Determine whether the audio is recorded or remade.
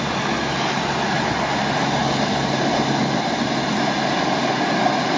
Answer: recorded